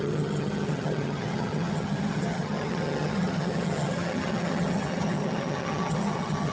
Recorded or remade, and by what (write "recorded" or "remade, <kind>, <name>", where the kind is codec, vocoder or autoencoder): remade, vocoder, HiFi-GAN